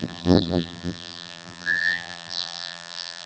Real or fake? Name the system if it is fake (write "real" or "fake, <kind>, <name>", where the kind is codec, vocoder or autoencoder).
fake, vocoder, BigVGAN v2